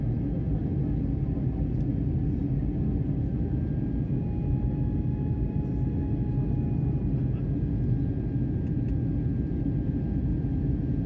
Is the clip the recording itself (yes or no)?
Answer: yes